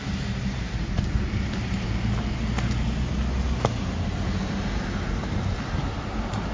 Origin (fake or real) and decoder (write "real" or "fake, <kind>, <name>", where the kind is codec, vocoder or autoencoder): real